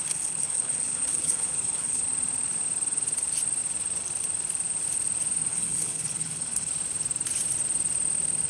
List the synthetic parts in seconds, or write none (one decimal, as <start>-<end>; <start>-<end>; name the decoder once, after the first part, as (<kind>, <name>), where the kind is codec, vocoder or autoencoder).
0.0-2.0 (codec, HILCodec); 5.5-6.7